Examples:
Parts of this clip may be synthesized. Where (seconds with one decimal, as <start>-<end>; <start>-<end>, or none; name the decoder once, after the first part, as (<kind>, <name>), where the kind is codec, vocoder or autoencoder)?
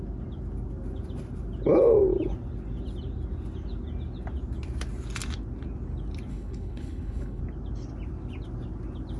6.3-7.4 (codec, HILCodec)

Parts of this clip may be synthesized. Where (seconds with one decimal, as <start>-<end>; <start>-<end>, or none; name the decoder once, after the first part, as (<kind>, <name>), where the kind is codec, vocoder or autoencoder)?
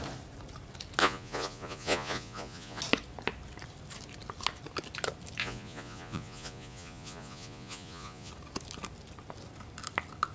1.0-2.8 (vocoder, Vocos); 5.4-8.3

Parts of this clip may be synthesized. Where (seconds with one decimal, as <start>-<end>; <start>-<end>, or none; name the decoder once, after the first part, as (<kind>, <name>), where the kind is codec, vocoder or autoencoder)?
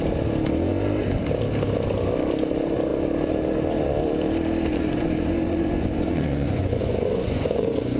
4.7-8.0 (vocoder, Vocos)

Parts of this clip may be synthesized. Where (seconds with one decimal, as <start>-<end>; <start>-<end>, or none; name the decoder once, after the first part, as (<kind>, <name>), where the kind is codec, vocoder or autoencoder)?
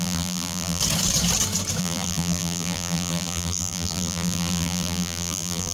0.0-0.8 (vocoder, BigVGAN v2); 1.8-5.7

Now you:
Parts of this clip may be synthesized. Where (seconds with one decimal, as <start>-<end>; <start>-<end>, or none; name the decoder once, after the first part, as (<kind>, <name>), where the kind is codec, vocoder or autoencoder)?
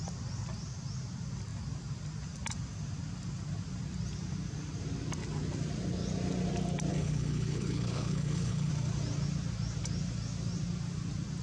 6.9-8.7 (codec, HILCodec)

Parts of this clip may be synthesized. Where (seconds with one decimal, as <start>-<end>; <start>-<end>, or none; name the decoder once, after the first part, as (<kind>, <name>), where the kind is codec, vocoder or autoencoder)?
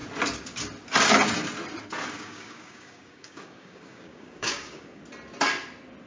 2.1-5.0 (codec, DAC)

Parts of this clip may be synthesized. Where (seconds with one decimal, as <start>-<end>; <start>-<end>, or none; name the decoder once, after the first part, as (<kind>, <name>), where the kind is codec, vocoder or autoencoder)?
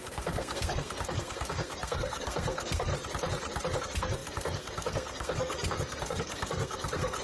0.0-2.9 (codec, SNAC); 3.8-7.2